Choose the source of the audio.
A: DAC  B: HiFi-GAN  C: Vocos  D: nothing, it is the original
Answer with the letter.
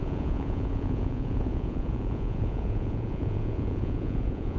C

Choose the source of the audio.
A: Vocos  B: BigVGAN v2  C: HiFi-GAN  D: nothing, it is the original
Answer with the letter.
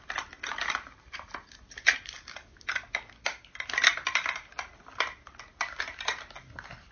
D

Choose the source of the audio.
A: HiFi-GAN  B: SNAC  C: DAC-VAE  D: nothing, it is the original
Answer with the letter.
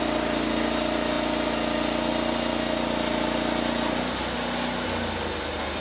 D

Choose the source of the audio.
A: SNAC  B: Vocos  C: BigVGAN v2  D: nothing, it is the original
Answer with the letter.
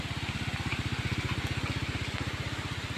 D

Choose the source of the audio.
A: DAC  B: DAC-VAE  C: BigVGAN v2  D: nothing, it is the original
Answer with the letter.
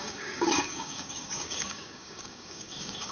A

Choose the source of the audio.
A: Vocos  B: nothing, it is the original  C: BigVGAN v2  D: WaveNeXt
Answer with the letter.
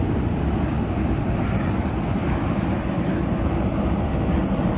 B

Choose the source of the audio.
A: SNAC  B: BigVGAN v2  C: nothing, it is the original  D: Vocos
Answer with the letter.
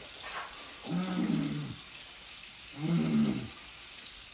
C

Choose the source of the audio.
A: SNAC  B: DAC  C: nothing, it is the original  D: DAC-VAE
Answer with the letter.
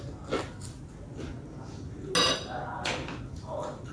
C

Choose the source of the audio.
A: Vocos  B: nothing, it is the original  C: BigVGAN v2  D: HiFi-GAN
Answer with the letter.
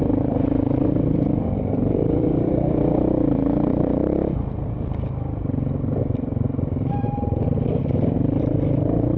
C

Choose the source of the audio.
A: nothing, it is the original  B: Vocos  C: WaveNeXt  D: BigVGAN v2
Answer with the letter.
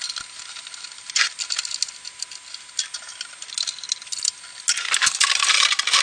A